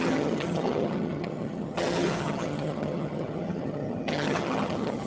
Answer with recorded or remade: remade